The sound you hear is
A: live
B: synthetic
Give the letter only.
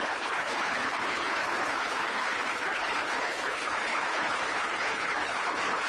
B